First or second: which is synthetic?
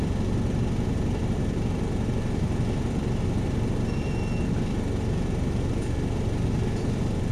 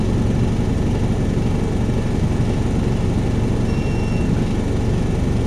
first